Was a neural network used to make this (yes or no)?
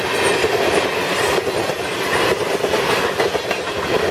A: no